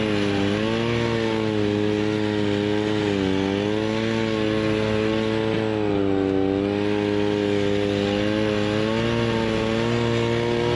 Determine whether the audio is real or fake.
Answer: real